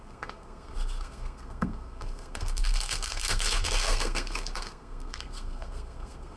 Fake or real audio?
fake